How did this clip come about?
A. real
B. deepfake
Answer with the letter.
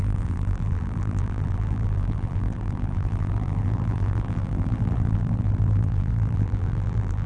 B